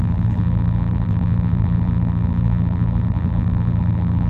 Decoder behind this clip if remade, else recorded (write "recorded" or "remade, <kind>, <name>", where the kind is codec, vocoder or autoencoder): remade, vocoder, BigVGAN v2